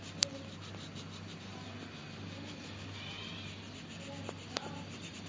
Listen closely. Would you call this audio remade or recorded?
recorded